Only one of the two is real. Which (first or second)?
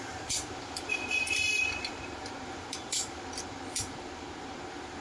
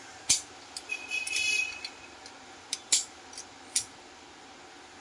second